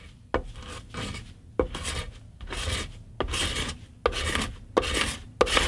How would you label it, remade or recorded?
recorded